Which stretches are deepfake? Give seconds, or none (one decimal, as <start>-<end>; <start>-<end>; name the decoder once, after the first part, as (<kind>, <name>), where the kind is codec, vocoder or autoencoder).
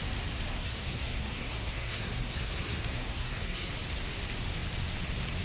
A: 0.5-3.7 (codec, SNAC)